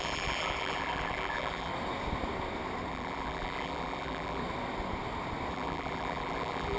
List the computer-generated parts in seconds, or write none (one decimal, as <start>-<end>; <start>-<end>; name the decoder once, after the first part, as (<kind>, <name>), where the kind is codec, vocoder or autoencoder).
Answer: 0.0-1.7 (vocoder, BigVGAN v2); 2.9-4.4; 5.5-6.8